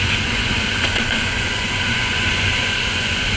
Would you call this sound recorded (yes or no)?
no